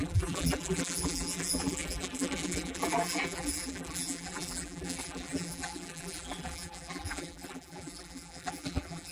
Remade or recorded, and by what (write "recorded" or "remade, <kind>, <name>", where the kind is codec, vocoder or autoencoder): remade, vocoder, BigVGAN v2